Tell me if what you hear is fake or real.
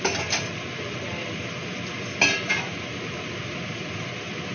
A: real